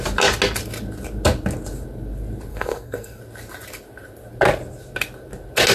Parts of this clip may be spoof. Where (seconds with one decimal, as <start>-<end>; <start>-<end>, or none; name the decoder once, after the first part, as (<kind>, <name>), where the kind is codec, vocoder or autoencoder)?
2.5-3.2 (codec, SNAC)